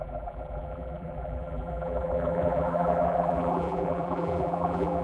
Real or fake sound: fake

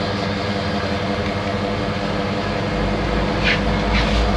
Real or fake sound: real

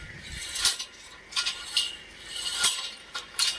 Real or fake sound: real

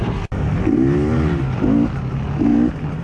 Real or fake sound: real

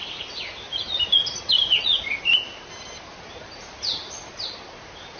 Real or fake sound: real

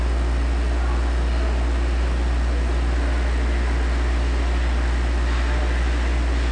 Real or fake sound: real